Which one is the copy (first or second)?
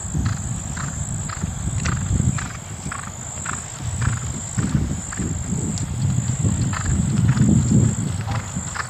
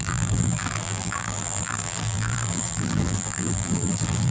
second